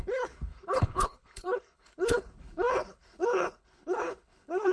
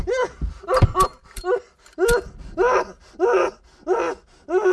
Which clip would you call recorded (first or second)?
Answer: second